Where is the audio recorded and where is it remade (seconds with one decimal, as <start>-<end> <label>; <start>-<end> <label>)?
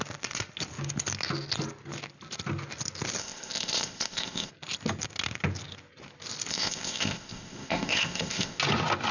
0.0-3.2 recorded; 3.2-4.5 remade; 4.5-6.5 recorded; 6.5-8.6 remade; 8.6-9.1 recorded